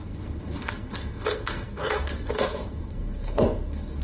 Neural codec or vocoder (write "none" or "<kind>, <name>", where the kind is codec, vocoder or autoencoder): codec, SNAC